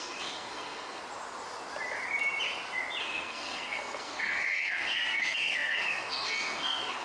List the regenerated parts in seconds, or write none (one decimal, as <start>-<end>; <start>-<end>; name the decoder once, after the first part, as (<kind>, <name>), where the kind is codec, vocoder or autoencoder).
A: 0.0-1.0 (codec, SNAC); 3.0-7.0